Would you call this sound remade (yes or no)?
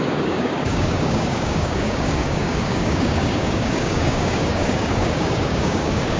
yes